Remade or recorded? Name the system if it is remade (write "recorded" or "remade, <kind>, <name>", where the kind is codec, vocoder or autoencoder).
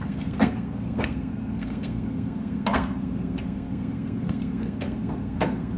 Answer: remade, codec, SNAC